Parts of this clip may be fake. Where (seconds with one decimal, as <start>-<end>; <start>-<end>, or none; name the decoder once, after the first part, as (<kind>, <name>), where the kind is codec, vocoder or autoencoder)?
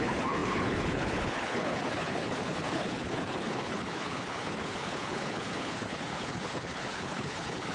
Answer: 0.0-7.7 (codec, HILCodec)